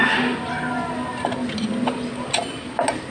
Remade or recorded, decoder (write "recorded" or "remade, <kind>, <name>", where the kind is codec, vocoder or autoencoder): recorded